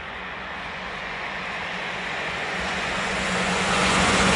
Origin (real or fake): fake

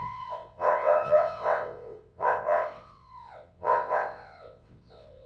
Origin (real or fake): fake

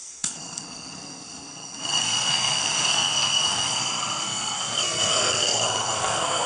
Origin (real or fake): fake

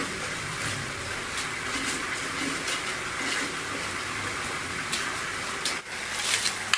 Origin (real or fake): real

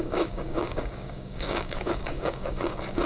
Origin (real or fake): fake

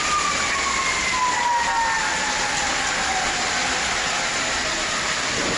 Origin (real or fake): real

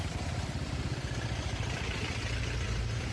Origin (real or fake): fake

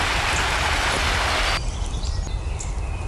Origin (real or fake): real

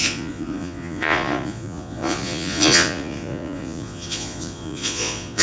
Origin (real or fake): fake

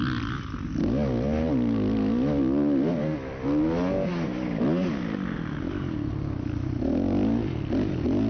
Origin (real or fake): real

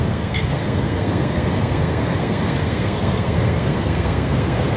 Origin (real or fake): fake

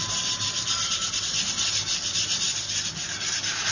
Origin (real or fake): real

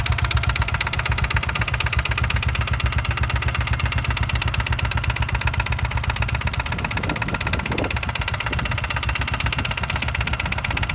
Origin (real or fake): real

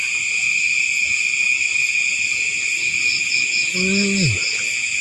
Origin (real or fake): real